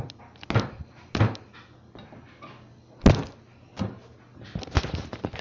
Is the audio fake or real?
real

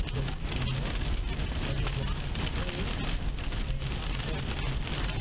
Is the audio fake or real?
real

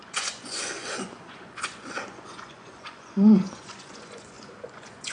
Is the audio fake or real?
fake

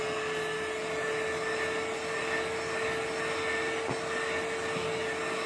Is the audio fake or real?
real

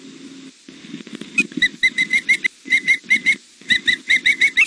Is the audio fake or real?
real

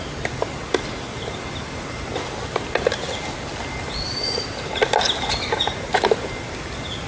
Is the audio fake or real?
real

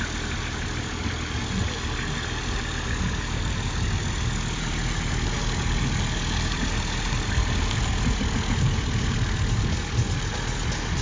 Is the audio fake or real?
real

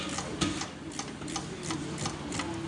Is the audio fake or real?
real